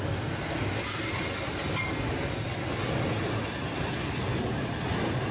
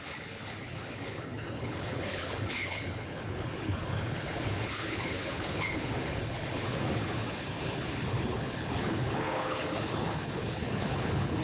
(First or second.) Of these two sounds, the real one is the first